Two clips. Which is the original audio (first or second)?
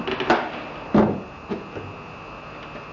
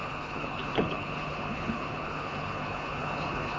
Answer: first